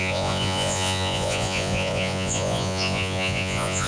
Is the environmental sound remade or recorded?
remade